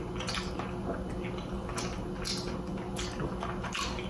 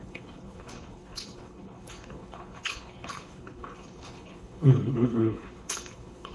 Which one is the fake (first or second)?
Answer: second